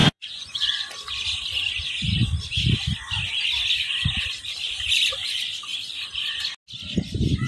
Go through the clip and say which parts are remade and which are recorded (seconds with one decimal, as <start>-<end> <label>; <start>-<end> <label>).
0.0-0.9 remade; 0.9-7.5 recorded

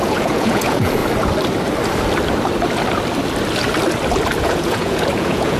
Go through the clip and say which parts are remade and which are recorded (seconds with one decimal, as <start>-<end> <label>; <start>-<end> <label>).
0.0-1.0 remade; 1.0-4.4 recorded; 4.4-5.6 remade

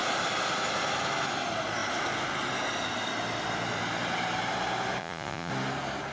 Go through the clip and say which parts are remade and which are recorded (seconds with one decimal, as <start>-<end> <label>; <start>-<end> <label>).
0.0-5.0 recorded; 5.0-5.5 remade; 5.5-6.1 recorded

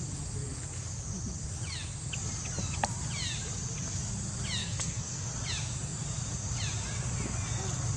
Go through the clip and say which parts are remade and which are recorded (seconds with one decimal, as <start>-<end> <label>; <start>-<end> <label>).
0.0-4.6 recorded; 4.6-5.3 remade; 5.3-8.0 recorded

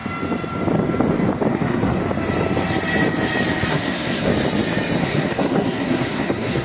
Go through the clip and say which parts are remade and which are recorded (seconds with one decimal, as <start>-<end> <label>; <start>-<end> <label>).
0.0-1.5 recorded; 1.5-2.0 remade; 2.0-3.7 recorded; 3.7-4.3 remade; 4.3-5.0 recorded; 5.0-6.6 remade